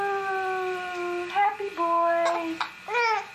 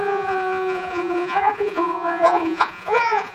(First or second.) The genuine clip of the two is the first